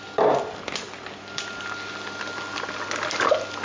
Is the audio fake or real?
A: real